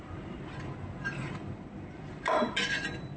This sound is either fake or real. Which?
real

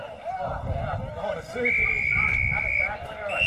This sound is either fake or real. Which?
real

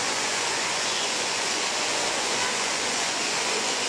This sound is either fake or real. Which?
fake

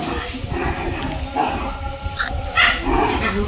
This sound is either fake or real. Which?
real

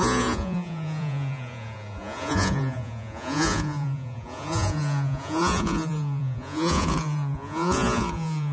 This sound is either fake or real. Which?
fake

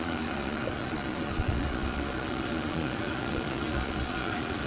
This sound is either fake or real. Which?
fake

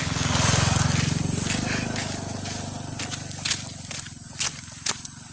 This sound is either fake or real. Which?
real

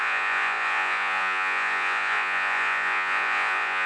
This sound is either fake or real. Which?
fake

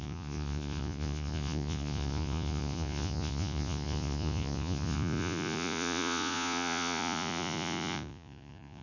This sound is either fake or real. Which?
fake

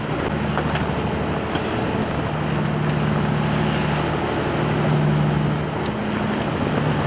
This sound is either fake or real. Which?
real